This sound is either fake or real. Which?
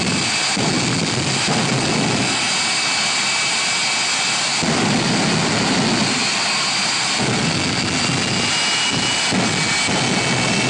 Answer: real